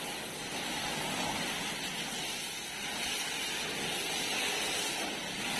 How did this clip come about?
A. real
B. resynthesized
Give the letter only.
A